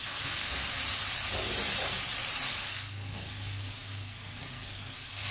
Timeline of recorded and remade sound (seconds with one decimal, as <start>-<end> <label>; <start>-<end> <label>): 0.0-0.8 remade; 0.8-2.5 recorded; 2.5-5.3 remade

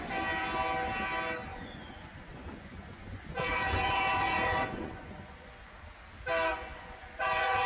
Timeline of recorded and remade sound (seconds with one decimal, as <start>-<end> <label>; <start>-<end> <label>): 0.0-1.5 recorded; 1.5-5.7 remade; 5.7-6.5 recorded; 6.5-7.7 remade

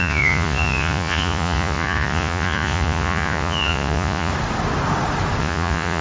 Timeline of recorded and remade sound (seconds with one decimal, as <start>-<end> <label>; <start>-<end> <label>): 0.0-4.3 remade; 4.3-5.4 recorded; 5.4-6.0 remade